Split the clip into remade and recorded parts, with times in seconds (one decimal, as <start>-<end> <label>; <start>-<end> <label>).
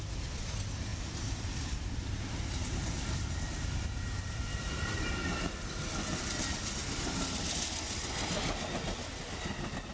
0.0-0.9 recorded; 0.9-5.0 remade; 5.0-6.8 recorded; 6.8-7.5 remade; 7.5-9.9 recorded